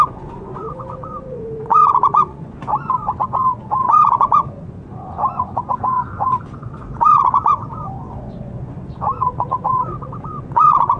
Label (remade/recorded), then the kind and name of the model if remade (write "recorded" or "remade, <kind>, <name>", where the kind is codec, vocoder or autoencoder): remade, vocoder, Vocos